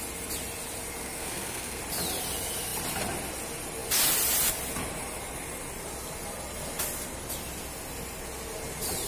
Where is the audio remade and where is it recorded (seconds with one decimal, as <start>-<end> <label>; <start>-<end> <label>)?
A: 0.0-1.0 recorded; 1.0-1.8 remade; 1.8-9.1 recorded

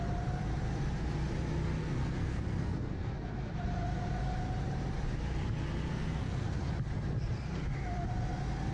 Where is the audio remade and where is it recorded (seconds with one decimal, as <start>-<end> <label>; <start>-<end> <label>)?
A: 0.0-1.8 recorded; 1.8-3.5 remade; 3.5-5.9 recorded; 5.9-6.6 remade; 6.6-8.7 recorded

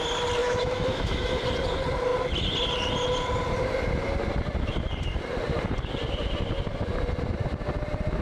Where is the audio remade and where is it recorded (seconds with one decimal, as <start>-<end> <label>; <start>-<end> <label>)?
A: 0.0-0.4 recorded; 0.4-1.4 remade; 1.4-8.2 recorded

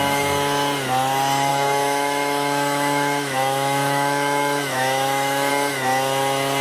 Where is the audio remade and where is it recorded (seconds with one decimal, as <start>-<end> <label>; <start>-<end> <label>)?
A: 0.0-1.5 recorded; 1.5-5.5 remade; 5.5-6.6 recorded

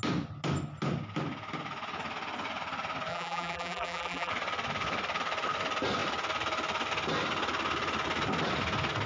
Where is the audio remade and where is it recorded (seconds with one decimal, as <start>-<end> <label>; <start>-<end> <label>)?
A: 0.0-3.1 recorded; 3.1-4.3 remade; 4.3-9.1 recorded

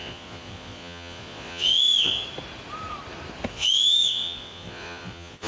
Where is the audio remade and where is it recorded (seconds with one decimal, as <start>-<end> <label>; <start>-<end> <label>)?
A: 0.0-2.2 remade; 2.2-3.5 recorded; 3.5-5.5 remade